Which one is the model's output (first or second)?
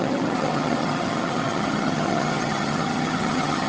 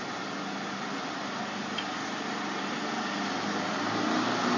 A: first